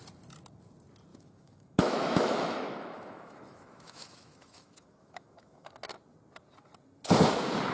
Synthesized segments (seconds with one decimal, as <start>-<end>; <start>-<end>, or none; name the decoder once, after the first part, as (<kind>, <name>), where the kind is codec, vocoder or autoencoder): 1.1-5.7 (autoencoder, DAC-VAE)